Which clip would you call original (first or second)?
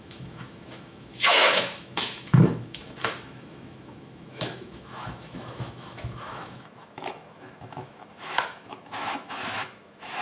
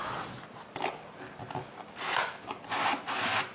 second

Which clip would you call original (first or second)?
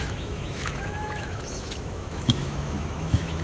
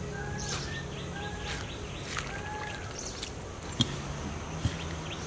second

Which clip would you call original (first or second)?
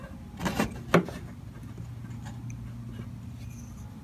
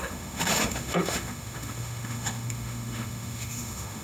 first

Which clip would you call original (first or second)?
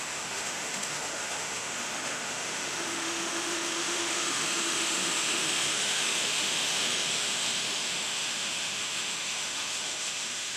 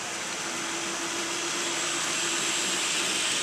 second